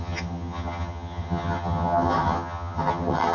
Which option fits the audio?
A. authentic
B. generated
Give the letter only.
B